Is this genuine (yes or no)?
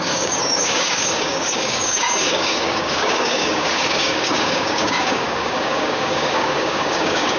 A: no